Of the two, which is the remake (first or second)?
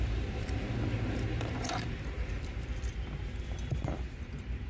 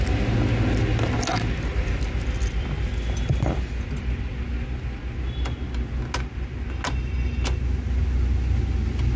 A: first